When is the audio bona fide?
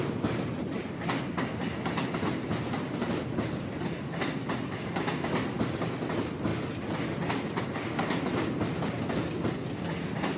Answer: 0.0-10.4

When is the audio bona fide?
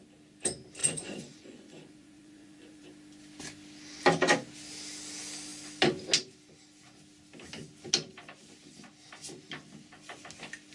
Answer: 0.0-0.8; 2.8-10.7